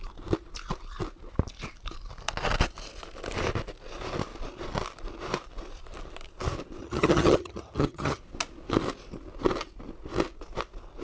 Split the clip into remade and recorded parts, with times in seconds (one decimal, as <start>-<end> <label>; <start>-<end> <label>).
0.0-6.8 recorded; 6.8-8.2 remade; 8.2-11.0 recorded